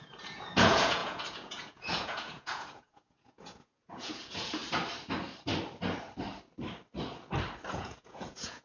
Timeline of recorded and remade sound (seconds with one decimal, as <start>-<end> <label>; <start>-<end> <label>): 0.0-4.6 remade; 4.6-7.7 recorded; 7.7-8.6 remade